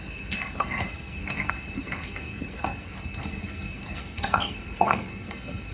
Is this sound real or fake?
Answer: fake